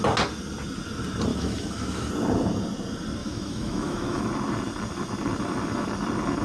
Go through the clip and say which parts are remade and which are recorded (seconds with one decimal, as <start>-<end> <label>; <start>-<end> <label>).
0.0-1.3 recorded; 1.3-2.1 remade; 2.1-3.2 recorded; 3.2-4.2 remade; 4.2-6.4 recorded